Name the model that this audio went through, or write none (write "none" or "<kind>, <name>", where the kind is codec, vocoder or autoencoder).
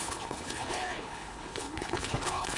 codec, HILCodec